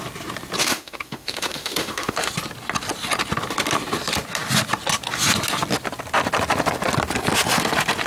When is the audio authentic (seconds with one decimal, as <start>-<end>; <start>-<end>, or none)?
0.0-0.6; 2.3-8.1